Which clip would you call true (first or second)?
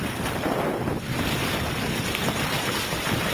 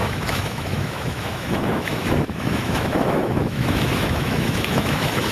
first